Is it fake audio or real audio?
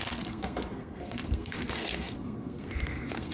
fake